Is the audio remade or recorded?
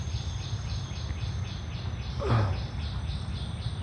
recorded